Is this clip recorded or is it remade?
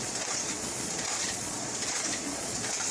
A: remade